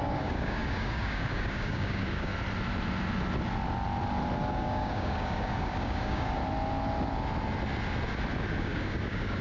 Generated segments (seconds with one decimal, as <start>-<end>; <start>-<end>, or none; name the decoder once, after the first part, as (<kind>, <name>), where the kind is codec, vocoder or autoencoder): 0.0-2.3 (codec, DAC); 4.5-6.4; 8.6-9.4